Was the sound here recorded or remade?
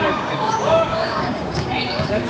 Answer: remade